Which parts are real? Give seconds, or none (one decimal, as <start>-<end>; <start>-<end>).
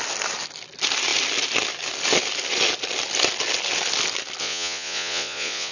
0.0-4.4